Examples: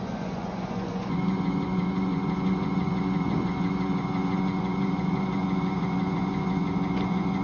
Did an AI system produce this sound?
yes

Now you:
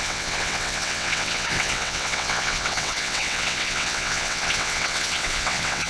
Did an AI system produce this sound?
yes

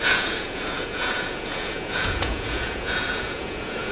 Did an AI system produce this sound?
yes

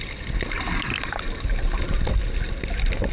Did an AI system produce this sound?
no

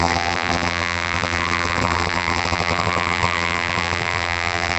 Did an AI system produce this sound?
yes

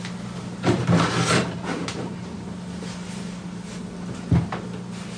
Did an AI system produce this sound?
no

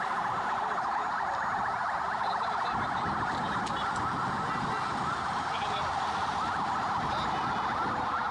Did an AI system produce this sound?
no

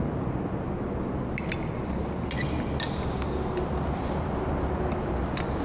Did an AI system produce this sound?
no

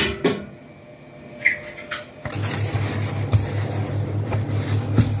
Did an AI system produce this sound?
no